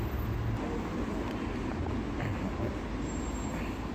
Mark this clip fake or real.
real